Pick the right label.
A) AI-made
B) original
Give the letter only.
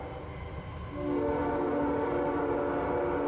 B